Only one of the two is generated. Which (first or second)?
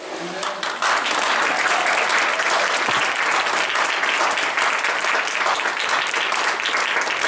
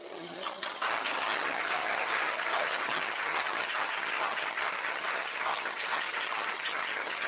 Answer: second